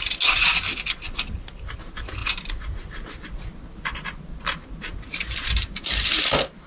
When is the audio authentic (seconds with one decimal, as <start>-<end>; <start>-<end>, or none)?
0.0-4.9; 5.7-6.7